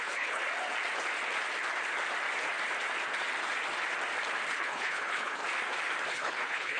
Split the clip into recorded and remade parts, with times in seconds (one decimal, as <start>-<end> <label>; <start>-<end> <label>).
0.0-0.4 remade; 0.4-4.5 recorded; 4.5-5.4 remade; 5.4-6.1 recorded; 6.1-6.8 remade